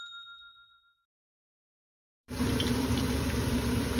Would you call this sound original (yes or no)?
no